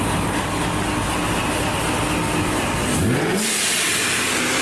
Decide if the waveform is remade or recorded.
recorded